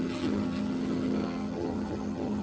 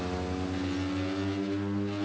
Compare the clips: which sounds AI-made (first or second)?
first